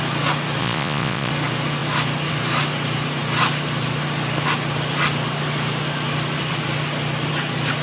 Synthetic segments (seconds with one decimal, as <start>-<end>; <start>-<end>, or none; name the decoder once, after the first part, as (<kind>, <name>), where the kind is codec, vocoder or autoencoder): 0.6-1.3 (vocoder, Vocos)